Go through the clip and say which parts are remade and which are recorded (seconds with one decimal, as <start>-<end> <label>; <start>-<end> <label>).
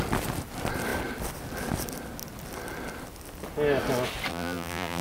0.0-4.3 recorded; 4.3-5.0 remade